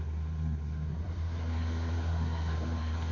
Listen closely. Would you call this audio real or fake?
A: fake